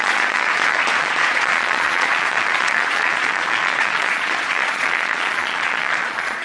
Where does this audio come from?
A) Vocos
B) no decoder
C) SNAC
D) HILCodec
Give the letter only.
A